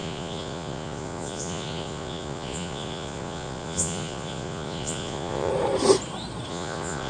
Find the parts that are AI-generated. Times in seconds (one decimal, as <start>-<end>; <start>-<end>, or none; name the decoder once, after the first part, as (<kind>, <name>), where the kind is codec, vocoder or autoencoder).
0.0-5.5 (vocoder, Vocos); 6.5-7.1